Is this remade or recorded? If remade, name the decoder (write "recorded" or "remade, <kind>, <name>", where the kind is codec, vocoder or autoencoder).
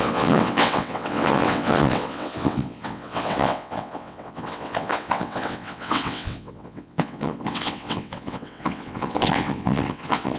remade, vocoder, WaveNeXt